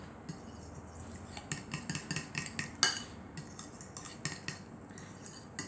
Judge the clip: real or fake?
real